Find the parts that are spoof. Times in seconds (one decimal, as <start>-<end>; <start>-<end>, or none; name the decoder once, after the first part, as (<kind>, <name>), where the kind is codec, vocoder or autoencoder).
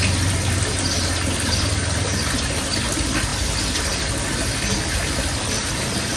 none